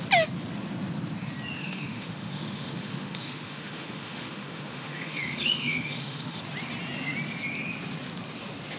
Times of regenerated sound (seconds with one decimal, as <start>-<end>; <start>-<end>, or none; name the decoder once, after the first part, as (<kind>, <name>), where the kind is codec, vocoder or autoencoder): 1.6-6.4 (autoencoder, DAC-VAE)